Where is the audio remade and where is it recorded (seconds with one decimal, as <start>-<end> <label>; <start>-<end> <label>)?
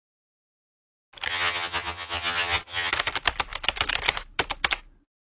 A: 0.0-1.3 recorded; 1.3-2.9 remade; 2.9-5.4 recorded